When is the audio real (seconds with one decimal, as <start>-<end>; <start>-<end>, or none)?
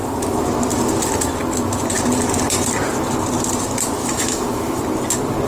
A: 0.0-4.0; 4.8-5.5